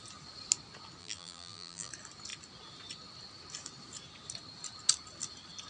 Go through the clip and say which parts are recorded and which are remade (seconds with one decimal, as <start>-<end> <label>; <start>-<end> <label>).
0.0-1.0 recorded; 1.0-1.9 remade; 1.9-5.7 recorded